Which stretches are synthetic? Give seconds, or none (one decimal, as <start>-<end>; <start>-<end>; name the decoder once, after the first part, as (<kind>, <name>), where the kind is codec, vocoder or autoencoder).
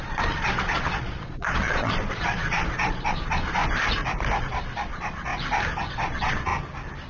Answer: 0.0-3.6 (vocoder, Vocos); 4.4-5.3; 5.9-6.5